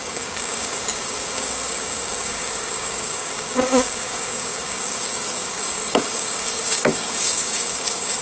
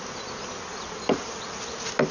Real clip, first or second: second